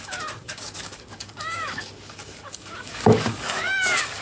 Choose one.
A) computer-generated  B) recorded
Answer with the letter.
A